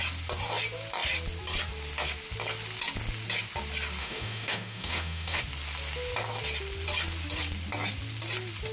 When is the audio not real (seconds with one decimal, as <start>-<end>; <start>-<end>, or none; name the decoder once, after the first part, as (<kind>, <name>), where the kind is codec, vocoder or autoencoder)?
4.0-5.4 (autoencoder, DAC-VAE)